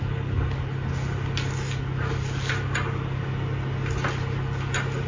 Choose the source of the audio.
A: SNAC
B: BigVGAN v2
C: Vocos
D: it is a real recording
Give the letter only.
D